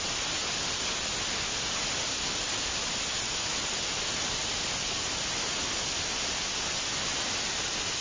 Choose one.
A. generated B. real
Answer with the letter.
B